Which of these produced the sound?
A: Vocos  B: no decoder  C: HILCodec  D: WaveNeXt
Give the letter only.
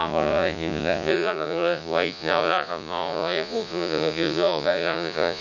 A